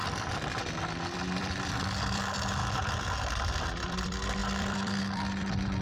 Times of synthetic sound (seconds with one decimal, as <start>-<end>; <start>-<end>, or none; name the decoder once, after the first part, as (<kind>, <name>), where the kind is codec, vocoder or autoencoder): 0.0-2.6 (vocoder, BigVGAN v2); 3.2-5.8